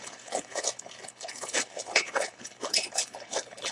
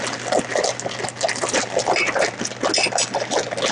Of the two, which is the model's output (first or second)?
first